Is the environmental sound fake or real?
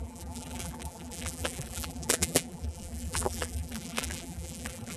fake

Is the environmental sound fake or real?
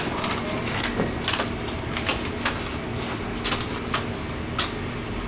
real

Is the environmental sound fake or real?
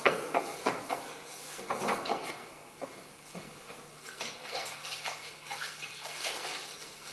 fake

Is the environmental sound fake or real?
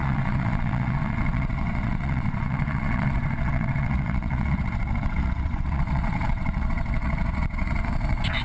fake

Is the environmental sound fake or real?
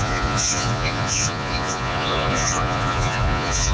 fake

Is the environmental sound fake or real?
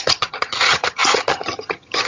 fake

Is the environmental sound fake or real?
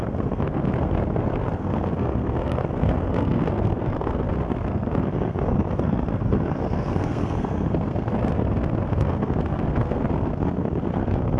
fake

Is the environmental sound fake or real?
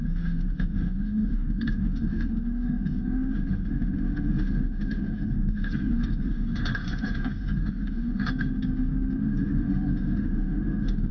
fake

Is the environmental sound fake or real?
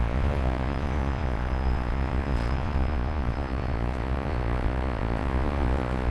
fake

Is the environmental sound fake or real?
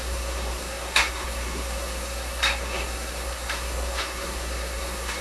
fake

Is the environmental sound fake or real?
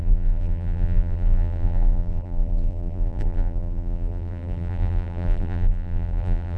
fake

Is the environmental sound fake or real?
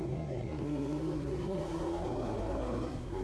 fake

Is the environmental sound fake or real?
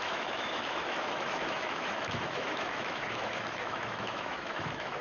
fake